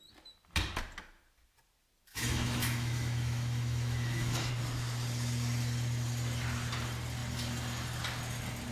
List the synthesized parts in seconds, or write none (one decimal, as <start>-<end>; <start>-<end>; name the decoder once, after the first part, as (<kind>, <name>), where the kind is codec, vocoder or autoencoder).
2.1-4.5 (autoencoder, DAC-VAE)